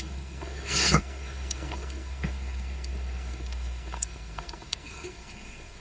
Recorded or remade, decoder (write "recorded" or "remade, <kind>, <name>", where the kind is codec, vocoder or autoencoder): remade, codec, SNAC